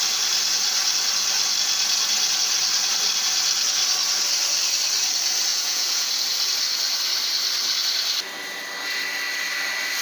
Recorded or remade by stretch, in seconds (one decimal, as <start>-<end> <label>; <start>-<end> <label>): 0.0-5.5 recorded; 5.5-6.1 remade; 6.1-10.0 recorded